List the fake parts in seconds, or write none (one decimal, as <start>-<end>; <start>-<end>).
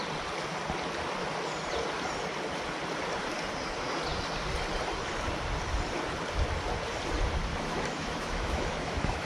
7.5-9.3